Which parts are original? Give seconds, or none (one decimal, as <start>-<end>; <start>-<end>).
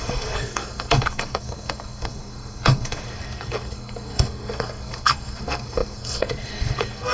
none